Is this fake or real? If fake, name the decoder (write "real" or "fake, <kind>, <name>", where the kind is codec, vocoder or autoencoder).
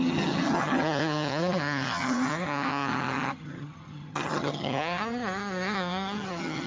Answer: fake, vocoder, HiFi-GAN